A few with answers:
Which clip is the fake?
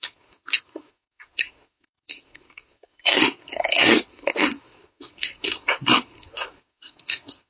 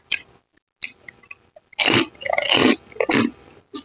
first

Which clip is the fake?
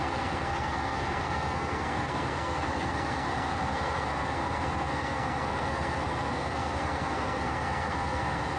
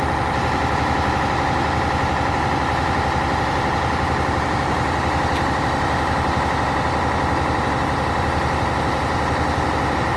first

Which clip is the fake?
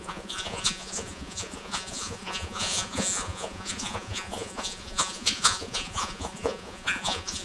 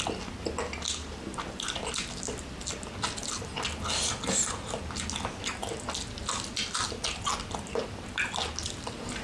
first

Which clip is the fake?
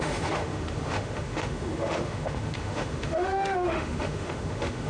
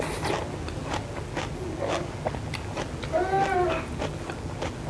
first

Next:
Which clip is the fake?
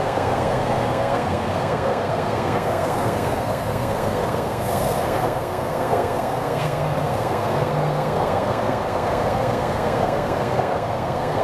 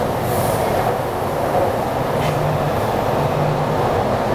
first